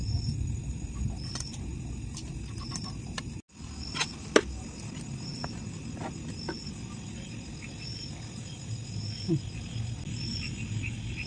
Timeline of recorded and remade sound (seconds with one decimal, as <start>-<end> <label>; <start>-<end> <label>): 0.0-11.3 recorded